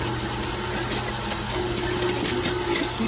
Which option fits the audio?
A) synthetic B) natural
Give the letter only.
B